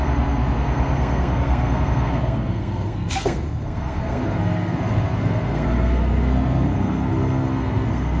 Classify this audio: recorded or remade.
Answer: remade